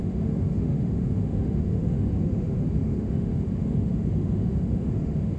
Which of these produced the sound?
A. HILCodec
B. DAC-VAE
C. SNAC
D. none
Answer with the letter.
B